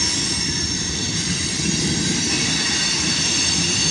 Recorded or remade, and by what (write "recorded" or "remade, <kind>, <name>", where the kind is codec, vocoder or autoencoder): recorded